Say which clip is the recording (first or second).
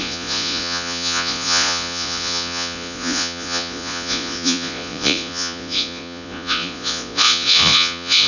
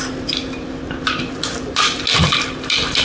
second